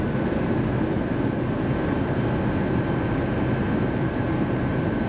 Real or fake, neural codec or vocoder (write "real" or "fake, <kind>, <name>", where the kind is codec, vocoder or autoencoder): real